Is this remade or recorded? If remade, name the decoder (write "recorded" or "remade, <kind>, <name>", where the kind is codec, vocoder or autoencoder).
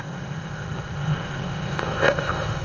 remade, codec, ZipCodec